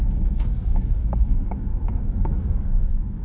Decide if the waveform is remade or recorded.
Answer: remade